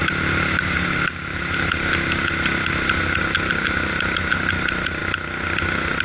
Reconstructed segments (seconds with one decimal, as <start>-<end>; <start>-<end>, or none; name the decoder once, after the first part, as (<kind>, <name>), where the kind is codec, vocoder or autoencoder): none